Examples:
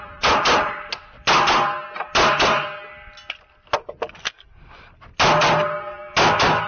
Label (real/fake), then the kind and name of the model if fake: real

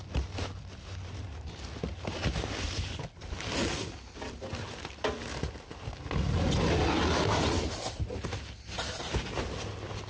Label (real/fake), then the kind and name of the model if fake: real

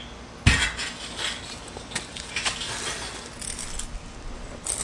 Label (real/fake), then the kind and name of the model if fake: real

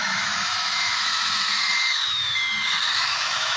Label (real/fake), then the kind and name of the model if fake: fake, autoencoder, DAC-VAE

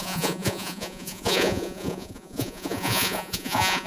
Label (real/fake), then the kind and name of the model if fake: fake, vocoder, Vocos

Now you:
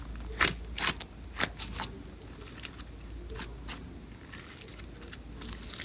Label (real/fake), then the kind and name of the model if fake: real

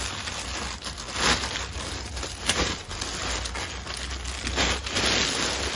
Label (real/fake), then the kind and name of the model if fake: real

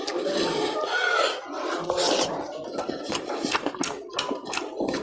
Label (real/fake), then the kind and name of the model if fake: real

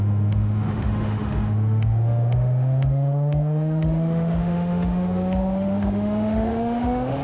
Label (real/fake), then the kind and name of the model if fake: fake, autoencoder, DAC-VAE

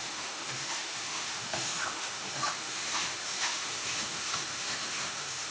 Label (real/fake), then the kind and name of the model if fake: fake, autoencoder, DAC-VAE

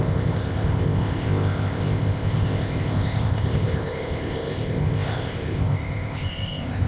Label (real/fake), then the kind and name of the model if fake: fake, codec, ZipCodec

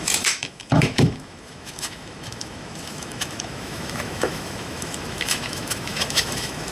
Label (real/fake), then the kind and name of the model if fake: fake, autoencoder, DAC-VAE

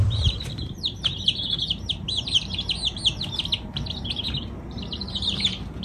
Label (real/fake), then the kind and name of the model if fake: fake, vocoder, BigVGAN v2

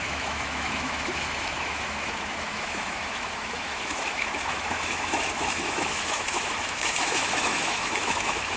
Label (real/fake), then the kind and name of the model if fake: fake, autoencoder, DAC-VAE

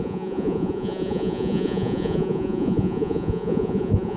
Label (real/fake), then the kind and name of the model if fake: fake, vocoder, Vocos